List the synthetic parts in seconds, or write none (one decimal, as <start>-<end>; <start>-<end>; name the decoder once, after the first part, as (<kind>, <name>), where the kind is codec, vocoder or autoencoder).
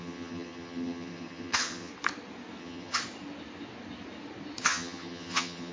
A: 0.0-1.9 (vocoder, HiFi-GAN); 2.6-3.0; 4.6-5.7